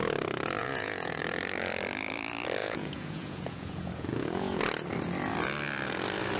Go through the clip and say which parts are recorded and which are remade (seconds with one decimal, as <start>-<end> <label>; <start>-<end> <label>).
0.0-0.6 recorded; 0.6-1.2 remade; 1.2-2.6 recorded; 2.6-4.6 remade; 4.6-6.4 recorded